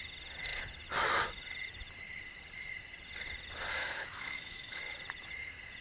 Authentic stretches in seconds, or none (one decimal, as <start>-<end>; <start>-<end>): 0.0-3.8; 4.8-5.8